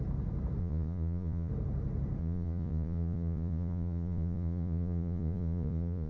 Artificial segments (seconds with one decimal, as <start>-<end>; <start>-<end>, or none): 0.6-1.5; 2.2-6.1